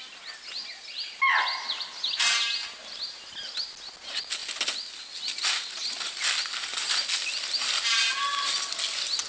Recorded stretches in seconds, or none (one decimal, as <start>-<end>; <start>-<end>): 0.0-9.3